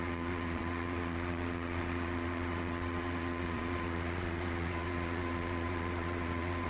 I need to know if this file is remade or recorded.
remade